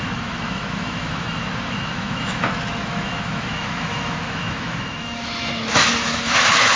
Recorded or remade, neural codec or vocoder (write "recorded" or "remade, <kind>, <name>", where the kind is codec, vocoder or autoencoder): remade, autoencoder, DAC-VAE